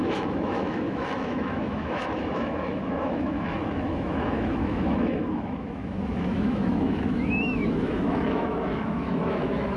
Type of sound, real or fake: fake